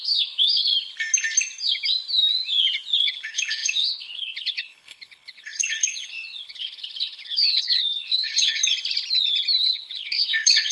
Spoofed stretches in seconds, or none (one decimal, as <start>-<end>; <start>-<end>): 0.0-0.7; 3.0-8.6; 9.6-10.7